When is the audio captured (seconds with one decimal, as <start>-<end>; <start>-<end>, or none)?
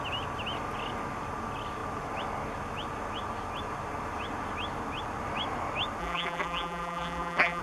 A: 0.0-6.0